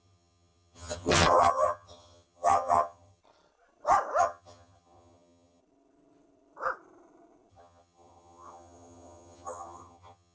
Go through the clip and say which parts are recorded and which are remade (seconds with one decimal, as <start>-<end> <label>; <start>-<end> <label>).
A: 0.0-3.2 remade; 3.2-4.2 recorded; 4.2-5.6 remade; 5.6-7.5 recorded; 7.5-10.3 remade